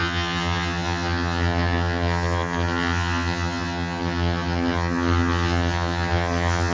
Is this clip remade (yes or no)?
yes